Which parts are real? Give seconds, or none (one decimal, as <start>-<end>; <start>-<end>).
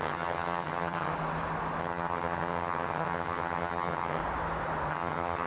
1.1-1.8; 4.2-4.9